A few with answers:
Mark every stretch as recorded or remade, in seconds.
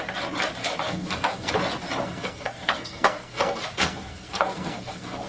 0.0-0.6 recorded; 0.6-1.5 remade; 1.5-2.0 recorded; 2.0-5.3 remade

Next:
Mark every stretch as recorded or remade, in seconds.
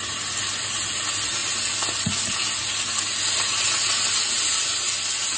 0.0-5.4 recorded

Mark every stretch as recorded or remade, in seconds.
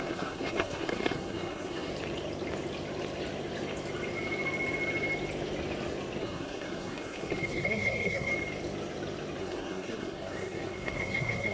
0.0-1.9 remade; 1.9-6.2 recorded; 6.2-8.3 remade; 8.3-9.4 recorded; 9.4-11.5 remade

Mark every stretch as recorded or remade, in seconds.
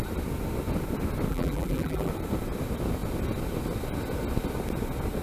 0.0-1.3 recorded; 1.3-2.1 remade; 2.1-5.2 recorded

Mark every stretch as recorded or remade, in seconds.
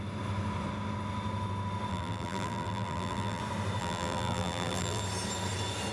0.0-1.9 recorded; 1.9-3.4 remade; 3.4-3.8 recorded; 3.8-5.0 remade; 5.0-5.9 recorded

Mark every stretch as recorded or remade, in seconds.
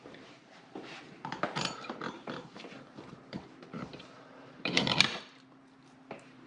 0.0-6.5 remade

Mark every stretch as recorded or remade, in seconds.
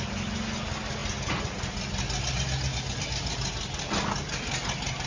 0.0-5.1 recorded